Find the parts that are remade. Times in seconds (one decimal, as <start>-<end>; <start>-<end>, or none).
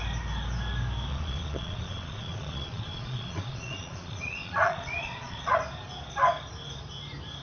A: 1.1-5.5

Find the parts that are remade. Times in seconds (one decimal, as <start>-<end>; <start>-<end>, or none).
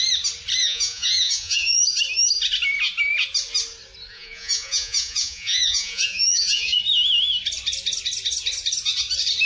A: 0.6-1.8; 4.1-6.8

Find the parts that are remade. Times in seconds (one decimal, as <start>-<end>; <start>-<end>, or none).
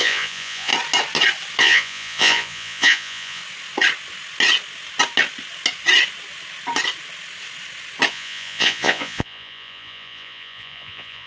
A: 0.0-0.7; 1.6-3.4; 8.1-11.3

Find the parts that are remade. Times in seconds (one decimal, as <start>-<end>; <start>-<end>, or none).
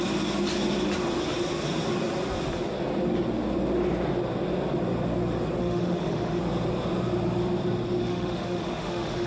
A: 5.6-6.4; 8.0-9.3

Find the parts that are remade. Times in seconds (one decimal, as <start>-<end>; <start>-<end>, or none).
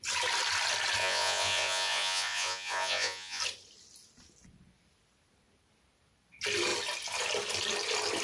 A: 1.0-3.4